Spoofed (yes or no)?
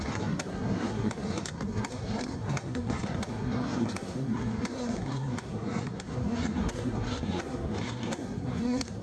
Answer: yes